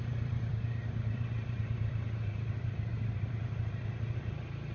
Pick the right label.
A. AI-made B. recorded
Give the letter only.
A